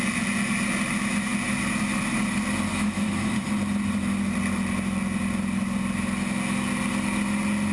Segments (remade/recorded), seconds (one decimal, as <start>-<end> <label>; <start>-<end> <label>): 0.0-2.7 recorded; 2.7-3.4 remade; 3.4-7.7 recorded